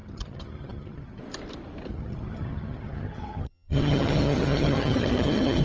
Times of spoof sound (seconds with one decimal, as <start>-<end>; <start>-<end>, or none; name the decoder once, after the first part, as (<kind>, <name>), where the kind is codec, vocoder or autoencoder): 0.0-1.2 (vocoder, HiFi-GAN); 1.9-5.6